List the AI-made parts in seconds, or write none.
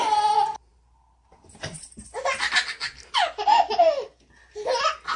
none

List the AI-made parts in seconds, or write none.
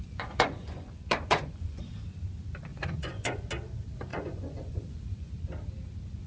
0.0-1.8; 2.7-3.4; 4.1-5.3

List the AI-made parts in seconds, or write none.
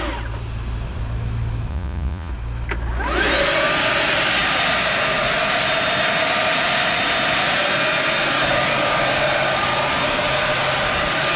1.7-2.3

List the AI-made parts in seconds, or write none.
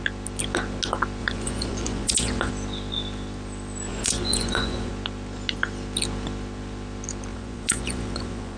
1.2-2.5; 3.9-4.9; 7.3-8.6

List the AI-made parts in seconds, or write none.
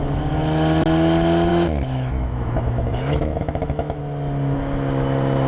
1.5-4.0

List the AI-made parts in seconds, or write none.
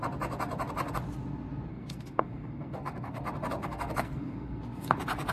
1.7-3.2; 3.6-4.6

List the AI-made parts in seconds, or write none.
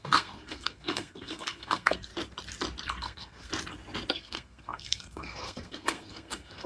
0.0-2.1; 3.0-3.5; 4.1-6.7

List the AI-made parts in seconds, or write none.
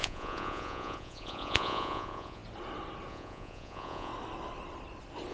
0.0-2.4; 3.1-4.1